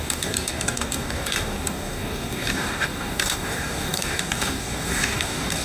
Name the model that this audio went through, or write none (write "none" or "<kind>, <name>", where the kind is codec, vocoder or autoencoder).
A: codec, DAC